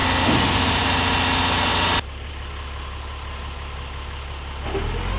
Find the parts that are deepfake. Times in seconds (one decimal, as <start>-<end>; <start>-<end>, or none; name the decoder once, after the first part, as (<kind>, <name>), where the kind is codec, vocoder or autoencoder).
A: none